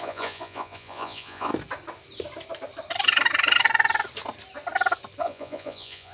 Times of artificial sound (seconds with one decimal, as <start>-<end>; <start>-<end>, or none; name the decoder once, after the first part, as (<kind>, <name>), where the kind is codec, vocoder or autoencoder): 0.0-1.5 (vocoder, Vocos); 5.2-6.1